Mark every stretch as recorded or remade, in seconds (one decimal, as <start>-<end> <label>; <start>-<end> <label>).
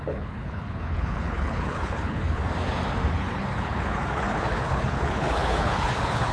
0.0-2.4 remade; 2.4-3.1 recorded; 3.1-6.3 remade